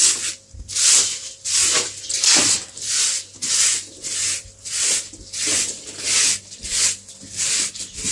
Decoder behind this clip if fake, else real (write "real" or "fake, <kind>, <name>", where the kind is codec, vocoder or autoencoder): real